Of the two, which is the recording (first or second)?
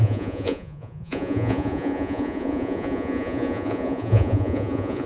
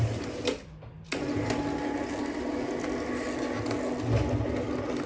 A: second